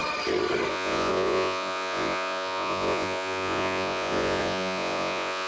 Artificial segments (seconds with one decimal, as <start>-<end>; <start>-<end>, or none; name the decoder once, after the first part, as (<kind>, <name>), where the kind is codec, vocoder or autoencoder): 0.7-5.5 (vocoder, Vocos)